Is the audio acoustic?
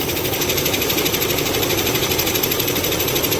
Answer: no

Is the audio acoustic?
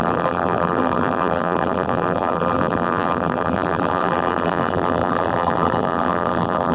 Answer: no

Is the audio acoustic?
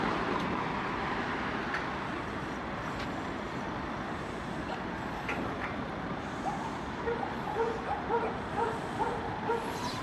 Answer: no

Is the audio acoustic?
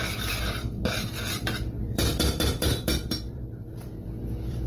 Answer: no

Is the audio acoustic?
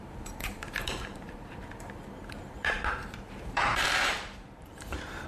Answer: no